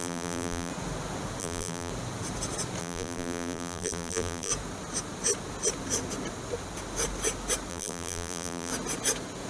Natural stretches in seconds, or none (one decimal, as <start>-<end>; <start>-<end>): 0.7-1.4; 1.9-2.8; 4.5-7.7; 8.7-9.5